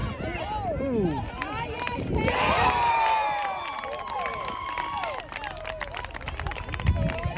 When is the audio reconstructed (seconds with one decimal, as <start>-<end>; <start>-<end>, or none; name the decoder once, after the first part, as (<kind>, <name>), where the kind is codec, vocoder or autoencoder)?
4.3-5.2 (codec, DAC)